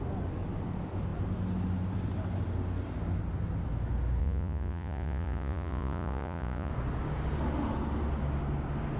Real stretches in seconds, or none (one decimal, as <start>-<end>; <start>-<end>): 0.0-4.2; 6.7-9.0